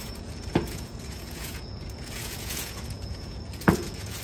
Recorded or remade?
remade